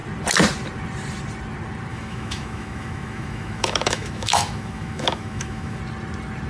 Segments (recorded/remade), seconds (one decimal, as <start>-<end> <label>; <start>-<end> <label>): 0.0-1.9 recorded; 1.9-5.8 remade; 5.8-6.5 recorded